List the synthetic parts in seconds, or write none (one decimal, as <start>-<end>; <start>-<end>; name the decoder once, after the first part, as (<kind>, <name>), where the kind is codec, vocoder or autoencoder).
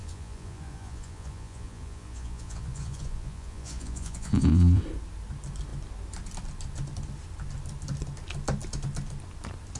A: 0.0-4.8 (vocoder, Vocos)